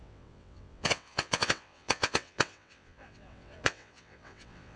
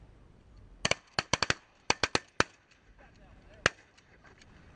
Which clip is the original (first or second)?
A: second